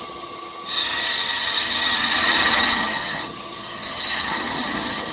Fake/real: fake